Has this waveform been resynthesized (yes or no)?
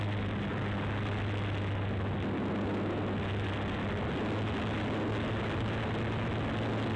no